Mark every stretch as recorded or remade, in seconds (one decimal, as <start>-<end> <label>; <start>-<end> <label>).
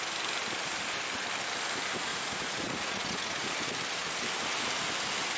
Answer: 0.0-2.1 recorded; 2.1-3.5 remade; 3.5-5.4 recorded